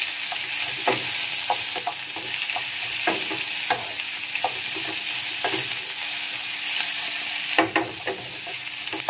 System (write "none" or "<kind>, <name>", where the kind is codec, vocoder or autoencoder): none